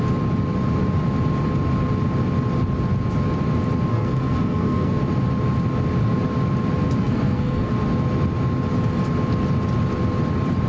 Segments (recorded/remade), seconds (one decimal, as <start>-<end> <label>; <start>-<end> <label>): 0.0-3.9 recorded; 3.9-5.0 remade; 5.0-7.0 recorded; 7.0-7.7 remade; 7.7-10.7 recorded